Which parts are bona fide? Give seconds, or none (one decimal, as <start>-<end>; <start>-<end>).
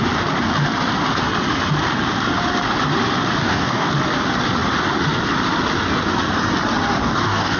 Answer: 0.0-3.4; 3.9-7.0